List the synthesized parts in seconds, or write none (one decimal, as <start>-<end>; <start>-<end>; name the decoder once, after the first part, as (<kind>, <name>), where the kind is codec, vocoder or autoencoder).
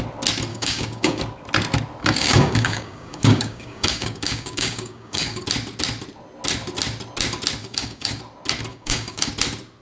0.5-1.2 (codec, DAC); 2.0-5.4; 7.6-8.2; 8.7-9.3